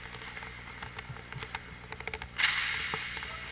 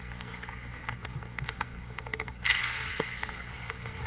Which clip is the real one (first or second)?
first